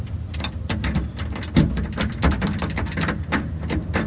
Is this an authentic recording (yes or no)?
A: no